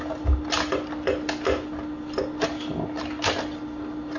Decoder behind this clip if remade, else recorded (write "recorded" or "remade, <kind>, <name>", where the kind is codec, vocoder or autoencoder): recorded